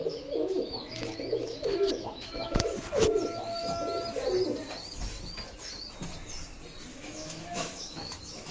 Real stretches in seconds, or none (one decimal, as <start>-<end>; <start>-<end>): 2.8-6.9